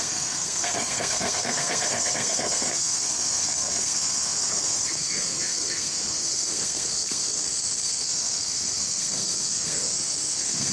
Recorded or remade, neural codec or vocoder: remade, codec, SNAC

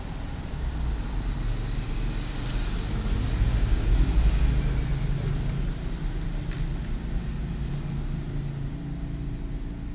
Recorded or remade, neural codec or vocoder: recorded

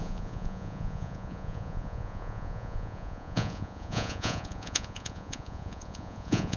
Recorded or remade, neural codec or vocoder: remade, vocoder, Vocos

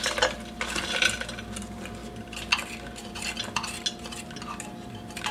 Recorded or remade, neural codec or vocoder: recorded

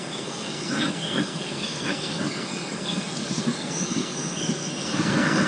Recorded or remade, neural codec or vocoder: remade, codec, SNAC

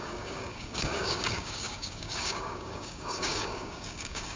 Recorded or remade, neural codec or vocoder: remade, codec, DAC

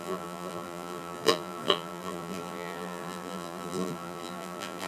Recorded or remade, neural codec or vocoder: remade, vocoder, BigVGAN v2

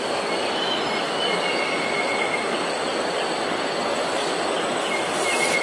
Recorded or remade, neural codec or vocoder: recorded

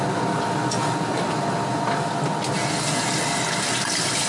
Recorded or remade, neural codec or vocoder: recorded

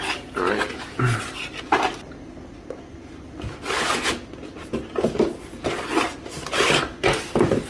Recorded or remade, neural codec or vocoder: recorded